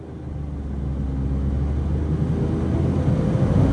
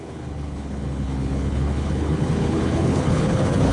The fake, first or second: second